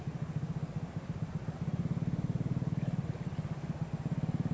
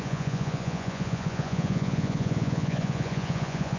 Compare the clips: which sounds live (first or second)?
first